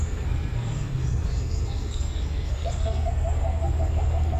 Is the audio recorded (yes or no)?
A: no